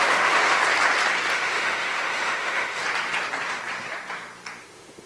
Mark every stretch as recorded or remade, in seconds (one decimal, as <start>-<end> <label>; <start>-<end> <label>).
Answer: 0.0-0.6 remade; 0.6-1.3 recorded; 1.3-2.8 remade; 2.8-4.6 recorded; 4.6-5.1 remade